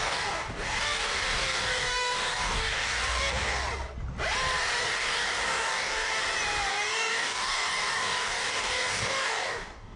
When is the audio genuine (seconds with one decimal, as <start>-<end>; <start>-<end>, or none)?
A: 3.6-4.8; 6.2-6.7